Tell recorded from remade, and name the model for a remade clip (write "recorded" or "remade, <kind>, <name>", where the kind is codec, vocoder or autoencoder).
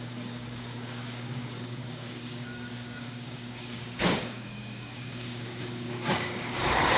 remade, codec, DAC